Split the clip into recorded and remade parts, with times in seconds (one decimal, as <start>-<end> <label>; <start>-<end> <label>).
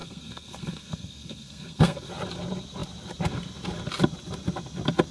0.0-2.1 remade; 2.1-5.1 recorded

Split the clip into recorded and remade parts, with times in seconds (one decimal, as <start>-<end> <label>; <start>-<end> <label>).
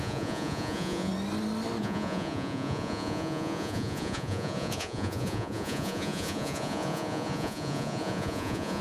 0.0-1.1 remade; 1.1-1.8 recorded; 1.8-8.8 remade